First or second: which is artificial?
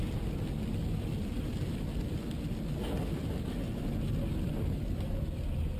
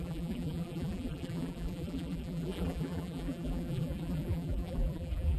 second